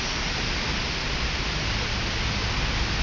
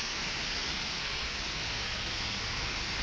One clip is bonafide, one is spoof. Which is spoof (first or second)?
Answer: second